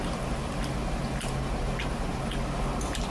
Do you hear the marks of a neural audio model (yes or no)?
no